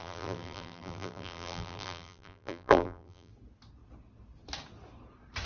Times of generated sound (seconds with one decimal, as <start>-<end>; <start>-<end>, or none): 0.0-3.3